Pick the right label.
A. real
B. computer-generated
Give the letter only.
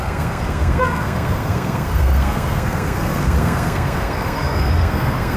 B